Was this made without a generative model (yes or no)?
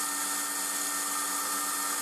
yes